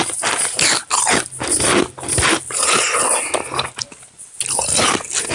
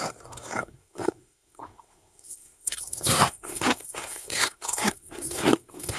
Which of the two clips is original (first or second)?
first